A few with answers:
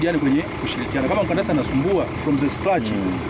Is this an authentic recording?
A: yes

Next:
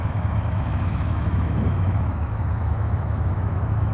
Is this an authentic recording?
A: no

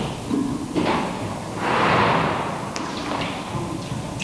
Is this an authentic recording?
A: yes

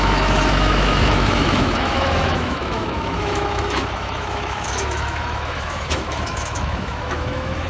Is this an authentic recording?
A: no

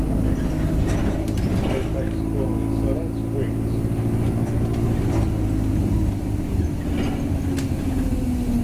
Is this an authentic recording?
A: yes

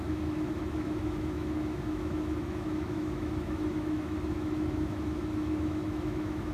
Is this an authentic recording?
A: no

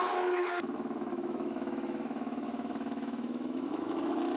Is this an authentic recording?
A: no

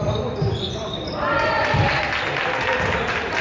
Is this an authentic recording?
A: yes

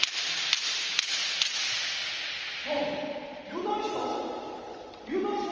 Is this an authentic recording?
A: yes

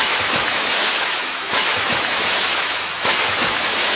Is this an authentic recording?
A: no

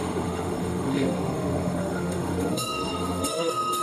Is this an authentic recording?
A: no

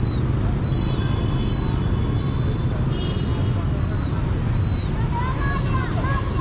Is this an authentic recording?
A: yes